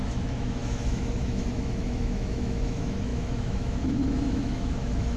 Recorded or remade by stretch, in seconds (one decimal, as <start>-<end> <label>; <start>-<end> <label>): 0.0-5.2 remade